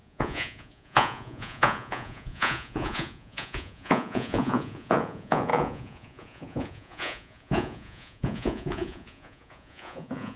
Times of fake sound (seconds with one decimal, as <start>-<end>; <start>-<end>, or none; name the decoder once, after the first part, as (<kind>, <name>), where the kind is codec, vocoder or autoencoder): 0.0-10.4 (vocoder, Vocos)